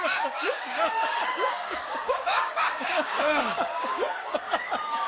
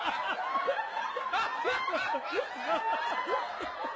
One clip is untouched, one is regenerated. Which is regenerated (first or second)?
first